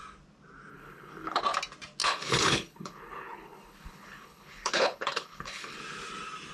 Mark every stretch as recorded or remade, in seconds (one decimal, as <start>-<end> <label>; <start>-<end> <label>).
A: 0.0-0.7 recorded; 0.7-1.4 remade; 1.4-2.0 recorded; 2.0-5.8 remade; 5.8-6.5 recorded